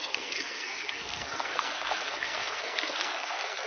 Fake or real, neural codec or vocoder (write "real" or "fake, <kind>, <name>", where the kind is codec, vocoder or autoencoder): fake, codec, SNAC